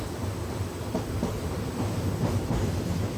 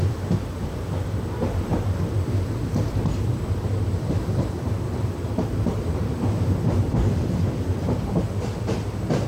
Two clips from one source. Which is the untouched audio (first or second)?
first